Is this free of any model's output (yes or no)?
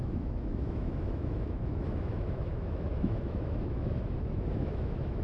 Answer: no